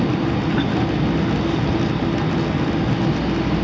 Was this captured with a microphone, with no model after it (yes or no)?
yes